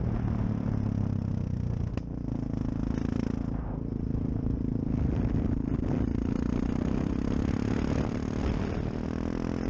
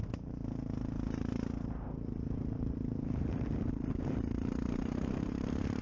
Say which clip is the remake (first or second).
second